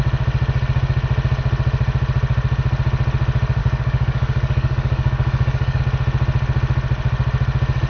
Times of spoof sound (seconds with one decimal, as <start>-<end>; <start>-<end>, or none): 3.6-5.8

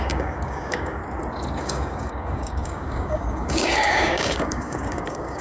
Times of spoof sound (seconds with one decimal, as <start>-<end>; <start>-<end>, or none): 0.0-1.0; 1.6-5.4

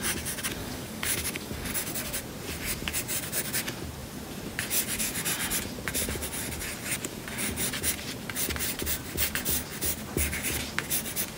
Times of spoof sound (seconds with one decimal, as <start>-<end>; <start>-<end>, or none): 0.6-1.7

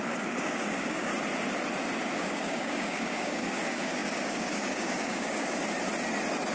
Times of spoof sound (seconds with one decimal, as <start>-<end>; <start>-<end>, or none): 0.0-1.1; 2.1-5.6

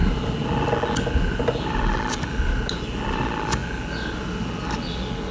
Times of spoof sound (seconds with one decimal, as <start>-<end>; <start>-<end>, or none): none

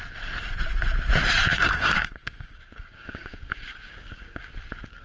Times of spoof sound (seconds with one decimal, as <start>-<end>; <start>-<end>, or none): 1.5-4.5

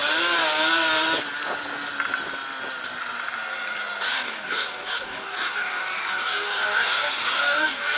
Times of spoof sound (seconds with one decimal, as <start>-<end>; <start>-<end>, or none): 4.1-8.0

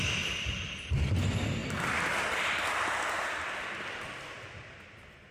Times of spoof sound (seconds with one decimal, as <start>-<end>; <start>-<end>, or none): none